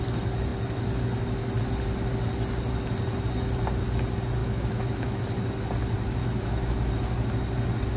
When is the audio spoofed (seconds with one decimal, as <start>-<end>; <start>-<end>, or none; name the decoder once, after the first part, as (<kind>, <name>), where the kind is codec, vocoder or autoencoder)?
4.4-5.2 (autoencoder, DAC-VAE); 6.2-6.9